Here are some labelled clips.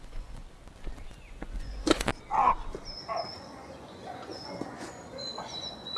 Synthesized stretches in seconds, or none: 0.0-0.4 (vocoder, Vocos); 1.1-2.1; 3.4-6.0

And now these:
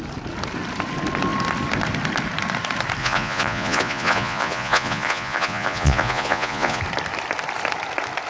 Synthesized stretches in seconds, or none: 3.0-6.8 (vocoder, Vocos)

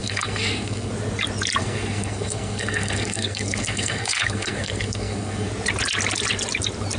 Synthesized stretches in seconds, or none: 0.0-0.9 (codec, SNAC); 1.6-5.5

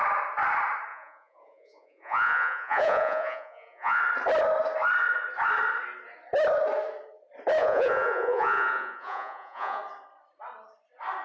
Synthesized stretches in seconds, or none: 0.9-4.0 (vocoder, Vocos); 7.6-9.8

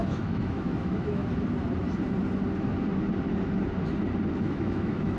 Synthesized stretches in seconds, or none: 0.0-1.2 (autoencoder, DAC-VAE); 4.3-5.2

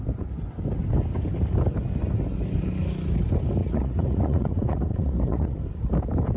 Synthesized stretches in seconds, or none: 3.6-5.6 (vocoder, Vocos)

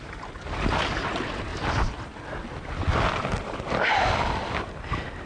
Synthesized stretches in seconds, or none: none

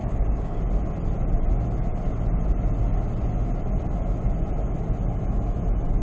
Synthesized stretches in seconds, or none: 0.0-0.6 (codec, DAC)